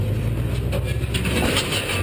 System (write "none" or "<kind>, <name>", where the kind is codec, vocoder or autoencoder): none